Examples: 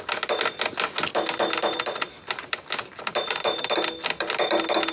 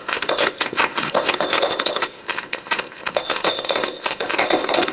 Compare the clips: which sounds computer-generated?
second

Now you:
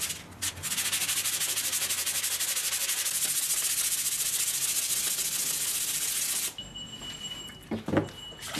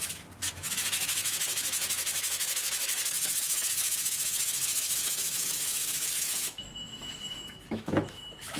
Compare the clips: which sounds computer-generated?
second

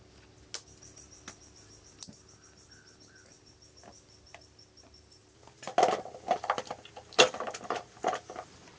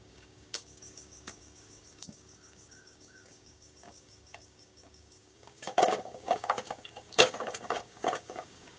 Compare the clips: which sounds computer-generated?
second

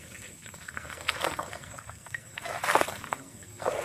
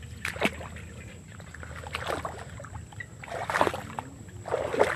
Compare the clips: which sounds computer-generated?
first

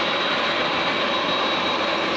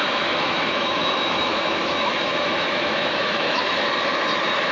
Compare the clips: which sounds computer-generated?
second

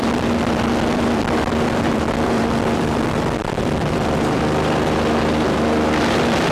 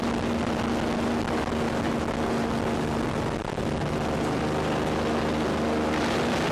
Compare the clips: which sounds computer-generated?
first